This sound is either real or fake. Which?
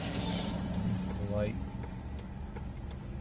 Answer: real